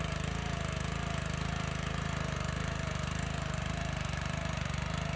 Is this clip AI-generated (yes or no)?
yes